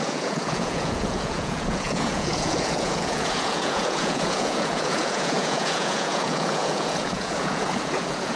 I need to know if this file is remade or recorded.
remade